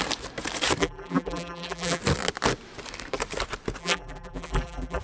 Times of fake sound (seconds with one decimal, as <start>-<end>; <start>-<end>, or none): 0.8-2.0; 3.8-5.0

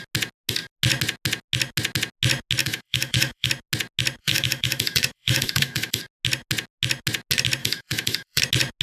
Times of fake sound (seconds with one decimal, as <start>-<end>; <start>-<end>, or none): 2.6-3.5; 4.2-6.0; 7.6-8.4